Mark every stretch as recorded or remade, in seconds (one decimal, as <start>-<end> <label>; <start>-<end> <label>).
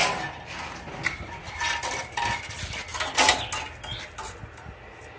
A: 0.0-1.0 recorded; 1.0-2.0 remade; 2.0-5.2 recorded